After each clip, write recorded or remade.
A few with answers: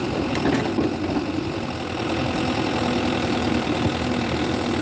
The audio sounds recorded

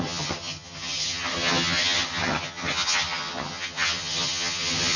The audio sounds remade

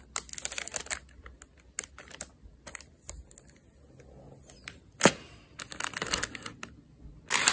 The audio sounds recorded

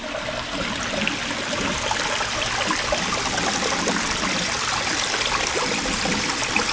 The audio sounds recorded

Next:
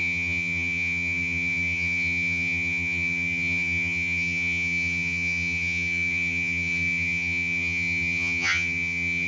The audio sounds remade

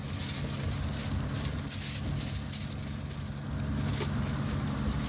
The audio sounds recorded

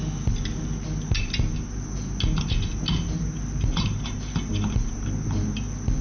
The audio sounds recorded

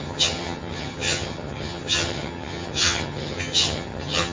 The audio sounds remade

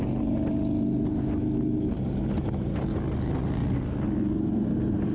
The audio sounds recorded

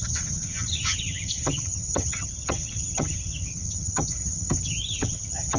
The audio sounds remade